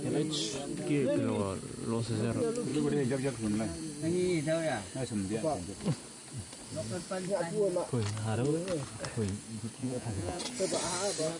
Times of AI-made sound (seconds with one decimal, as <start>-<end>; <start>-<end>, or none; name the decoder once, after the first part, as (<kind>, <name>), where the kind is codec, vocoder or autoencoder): 9.8-10.4 (vocoder, Vocos)